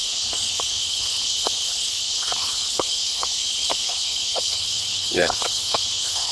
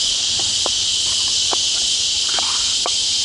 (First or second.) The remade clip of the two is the first